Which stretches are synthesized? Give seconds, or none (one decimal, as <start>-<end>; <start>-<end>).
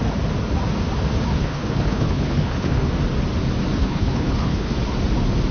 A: 1.4-2.9; 3.8-4.7